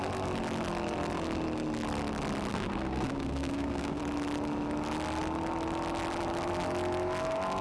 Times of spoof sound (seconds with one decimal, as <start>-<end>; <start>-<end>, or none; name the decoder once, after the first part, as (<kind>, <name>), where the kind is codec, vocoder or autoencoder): 2.5-4.0 (codec, SNAC)